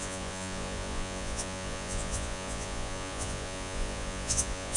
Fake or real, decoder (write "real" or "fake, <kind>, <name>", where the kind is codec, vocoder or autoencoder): fake, vocoder, Vocos